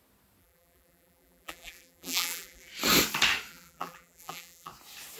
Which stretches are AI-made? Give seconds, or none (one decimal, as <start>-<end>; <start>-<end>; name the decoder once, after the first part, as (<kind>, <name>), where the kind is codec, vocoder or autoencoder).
0.4-2.7 (vocoder, BigVGAN v2); 3.5-4.7